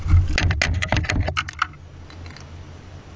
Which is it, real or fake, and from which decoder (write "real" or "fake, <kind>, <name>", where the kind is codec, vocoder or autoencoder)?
real